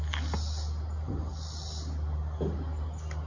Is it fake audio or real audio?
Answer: real